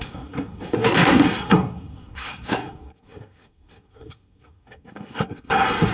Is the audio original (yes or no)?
no